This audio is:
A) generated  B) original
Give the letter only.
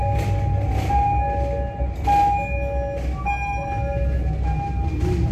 B